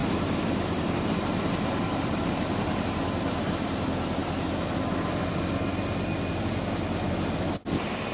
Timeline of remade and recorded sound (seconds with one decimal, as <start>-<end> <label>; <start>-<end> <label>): 0.0-3.8 remade; 3.8-8.1 recorded

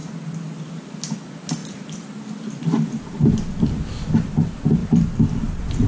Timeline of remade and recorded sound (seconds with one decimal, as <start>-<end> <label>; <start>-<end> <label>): 0.0-0.9 remade; 0.9-1.6 recorded; 1.6-3.4 remade; 3.4-4.8 recorded; 4.8-5.9 remade